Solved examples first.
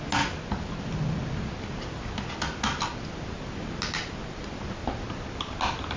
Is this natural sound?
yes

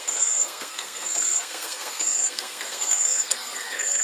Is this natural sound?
no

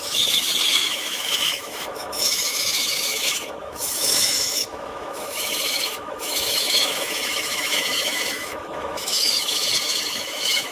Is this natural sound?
no